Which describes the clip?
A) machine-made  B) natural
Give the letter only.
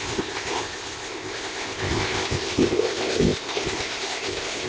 A